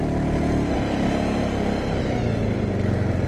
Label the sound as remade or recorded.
recorded